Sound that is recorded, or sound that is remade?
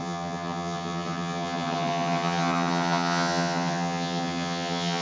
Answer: remade